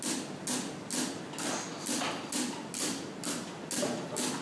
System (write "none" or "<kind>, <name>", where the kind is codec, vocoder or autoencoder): none